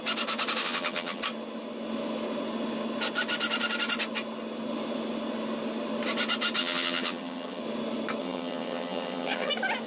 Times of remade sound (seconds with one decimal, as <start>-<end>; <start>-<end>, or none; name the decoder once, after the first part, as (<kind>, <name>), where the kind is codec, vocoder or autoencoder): 0.6-1.2 (vocoder, HiFi-GAN); 6.6-7.6; 8.2-9.5